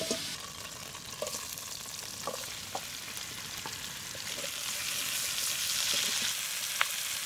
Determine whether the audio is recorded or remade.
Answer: recorded